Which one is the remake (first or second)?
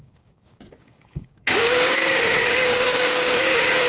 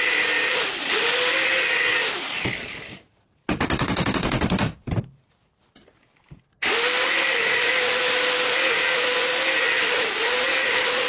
first